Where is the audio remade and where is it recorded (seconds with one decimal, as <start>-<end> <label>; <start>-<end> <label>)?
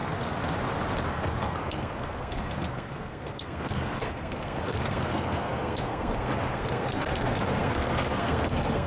0.0-1.1 recorded; 1.1-8.9 remade